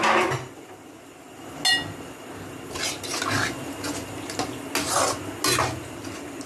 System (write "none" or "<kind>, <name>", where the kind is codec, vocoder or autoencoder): none